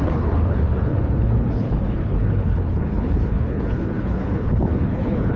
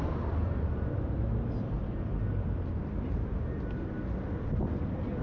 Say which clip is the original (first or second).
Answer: second